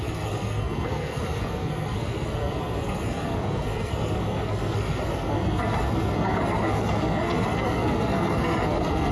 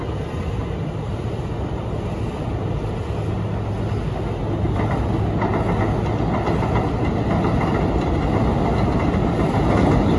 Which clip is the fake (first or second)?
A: first